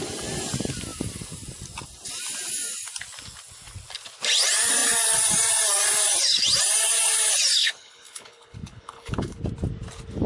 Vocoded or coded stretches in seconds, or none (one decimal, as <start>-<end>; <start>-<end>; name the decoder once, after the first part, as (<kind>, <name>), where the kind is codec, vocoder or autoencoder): 7.6-9.4 (codec, HILCodec)

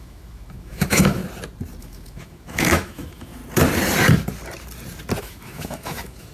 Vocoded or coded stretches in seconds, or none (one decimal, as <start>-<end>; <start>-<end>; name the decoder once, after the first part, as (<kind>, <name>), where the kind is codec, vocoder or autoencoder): 0.0-1.2 (autoencoder, DAC-VAE); 1.8-3.4; 5.2-6.3

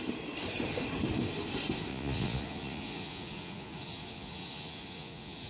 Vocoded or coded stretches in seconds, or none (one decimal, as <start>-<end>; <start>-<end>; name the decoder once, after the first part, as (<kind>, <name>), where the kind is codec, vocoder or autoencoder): 1.9-5.5 (vocoder, Vocos)

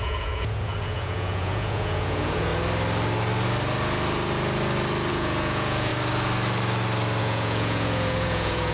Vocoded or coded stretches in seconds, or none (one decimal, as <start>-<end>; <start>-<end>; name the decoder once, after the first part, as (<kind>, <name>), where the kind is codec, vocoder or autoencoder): 0.0-2.5 (vocoder, Vocos); 5.1-5.9; 7.2-8.7

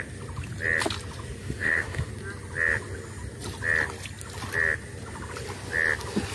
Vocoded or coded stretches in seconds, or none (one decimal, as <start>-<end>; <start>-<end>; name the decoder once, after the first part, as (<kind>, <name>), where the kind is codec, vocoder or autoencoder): 1.4-2.1 (autoencoder, DAC-VAE)

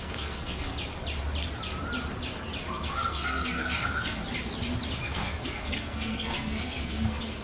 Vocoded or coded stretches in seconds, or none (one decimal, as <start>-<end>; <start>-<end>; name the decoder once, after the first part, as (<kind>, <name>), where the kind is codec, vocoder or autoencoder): 0.0-0.7 (codec, SNAC); 2.7-4.2; 5.0-7.4